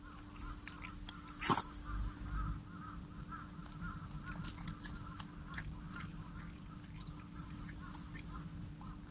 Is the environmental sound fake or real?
real